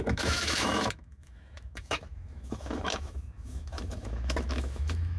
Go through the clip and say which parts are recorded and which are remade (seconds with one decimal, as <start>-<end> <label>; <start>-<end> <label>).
0.0-5.2 remade